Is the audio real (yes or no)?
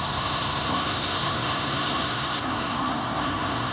no